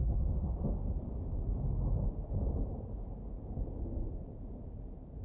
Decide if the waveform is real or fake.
real